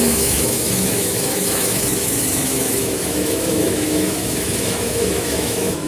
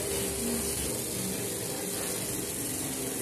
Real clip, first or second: second